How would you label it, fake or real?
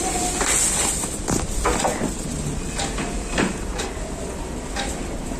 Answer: real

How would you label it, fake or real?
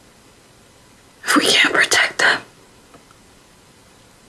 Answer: real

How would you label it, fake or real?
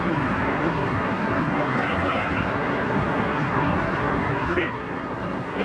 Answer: fake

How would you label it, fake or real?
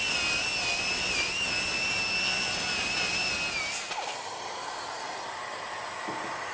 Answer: real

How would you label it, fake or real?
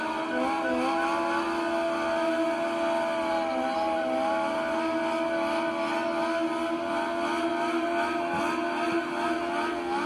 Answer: real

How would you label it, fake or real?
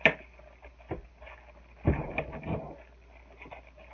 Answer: real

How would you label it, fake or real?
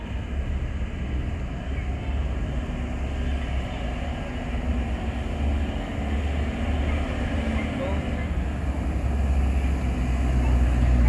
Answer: real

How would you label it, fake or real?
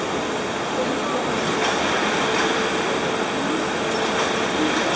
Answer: real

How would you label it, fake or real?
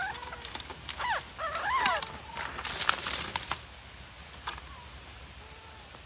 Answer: real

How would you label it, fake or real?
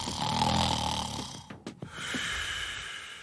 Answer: real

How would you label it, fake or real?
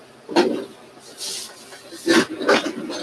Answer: real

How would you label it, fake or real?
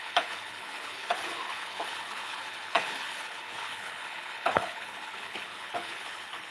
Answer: fake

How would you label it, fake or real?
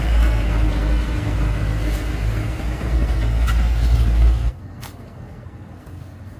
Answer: fake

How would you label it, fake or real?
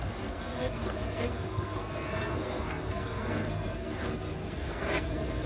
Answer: fake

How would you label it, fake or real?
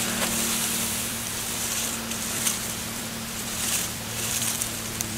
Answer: fake